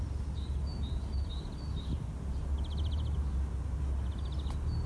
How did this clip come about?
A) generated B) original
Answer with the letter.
B